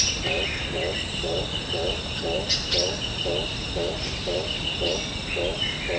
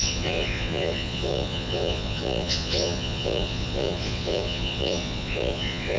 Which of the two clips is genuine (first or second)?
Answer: first